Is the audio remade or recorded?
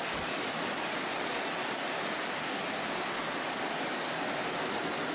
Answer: recorded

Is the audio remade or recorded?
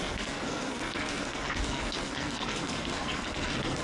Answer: remade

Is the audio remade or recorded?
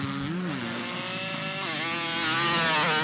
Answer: recorded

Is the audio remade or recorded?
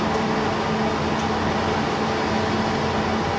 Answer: recorded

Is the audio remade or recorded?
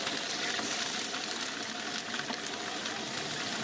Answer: recorded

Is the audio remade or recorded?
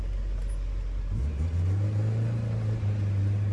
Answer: recorded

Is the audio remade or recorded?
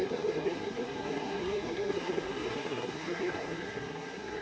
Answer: remade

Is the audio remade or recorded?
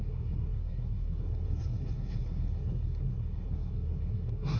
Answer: remade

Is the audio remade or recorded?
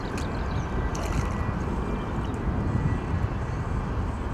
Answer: recorded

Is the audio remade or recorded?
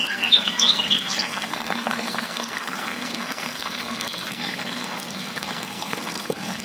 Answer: remade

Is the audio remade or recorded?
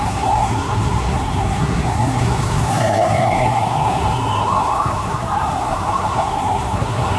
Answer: remade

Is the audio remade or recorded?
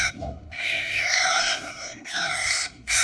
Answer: remade